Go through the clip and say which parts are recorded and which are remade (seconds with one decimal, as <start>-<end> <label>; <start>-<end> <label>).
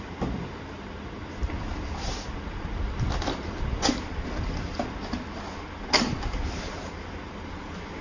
0.0-8.0 recorded